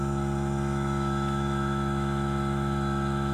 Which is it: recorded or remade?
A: remade